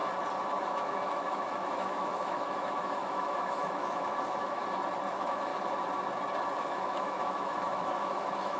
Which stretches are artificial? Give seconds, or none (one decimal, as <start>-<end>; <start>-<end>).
0.5-4.6; 5.1-5.5; 6.6-8.6